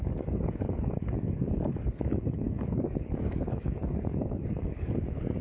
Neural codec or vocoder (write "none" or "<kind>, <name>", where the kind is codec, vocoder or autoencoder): codec, DAC